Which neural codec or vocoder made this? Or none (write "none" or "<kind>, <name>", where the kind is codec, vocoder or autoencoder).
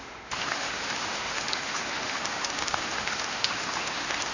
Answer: autoencoder, DAC-VAE